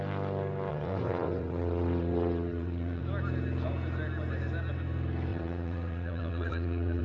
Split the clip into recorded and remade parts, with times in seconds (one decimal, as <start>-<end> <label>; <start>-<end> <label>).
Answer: 0.0-0.7 recorded; 0.7-3.0 remade; 3.0-5.3 recorded; 5.3-7.0 remade